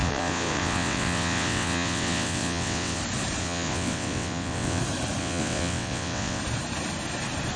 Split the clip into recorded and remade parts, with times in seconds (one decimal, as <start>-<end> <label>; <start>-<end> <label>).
0.0-3.0 remade; 3.0-3.4 recorded; 3.4-4.8 remade; 4.8-5.2 recorded; 5.2-6.4 remade; 6.4-7.6 recorded